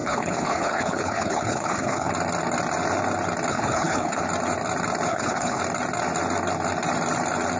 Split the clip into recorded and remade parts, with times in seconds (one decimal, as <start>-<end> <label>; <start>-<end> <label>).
0.0-2.1 remade; 2.1-3.5 recorded; 3.5-4.2 remade; 4.2-5.1 recorded; 5.1-5.6 remade; 5.6-7.6 recorded